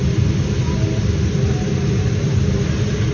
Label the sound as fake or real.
real